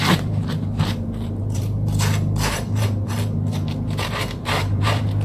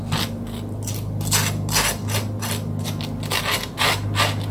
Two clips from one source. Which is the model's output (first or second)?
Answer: first